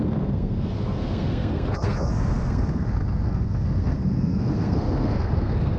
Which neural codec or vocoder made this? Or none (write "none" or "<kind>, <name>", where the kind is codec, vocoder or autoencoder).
codec, SNAC